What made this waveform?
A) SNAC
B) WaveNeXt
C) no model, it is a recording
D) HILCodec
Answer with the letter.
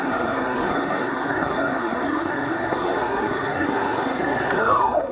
A